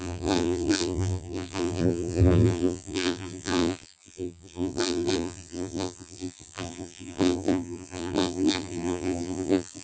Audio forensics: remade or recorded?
remade